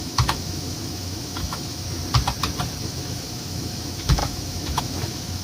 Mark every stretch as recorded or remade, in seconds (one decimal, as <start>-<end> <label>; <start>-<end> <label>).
0.0-2.0 remade; 2.0-2.8 recorded; 2.8-5.4 remade